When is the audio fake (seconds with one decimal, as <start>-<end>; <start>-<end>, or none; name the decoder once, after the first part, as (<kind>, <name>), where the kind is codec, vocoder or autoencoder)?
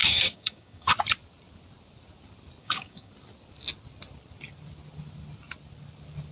0.0-0.9 (codec, DAC); 2.6-3.1